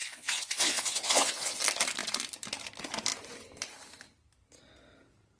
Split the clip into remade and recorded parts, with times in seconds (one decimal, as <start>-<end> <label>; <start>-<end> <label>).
0.0-1.6 remade; 1.6-5.4 recorded